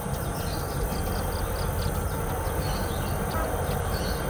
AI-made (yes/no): no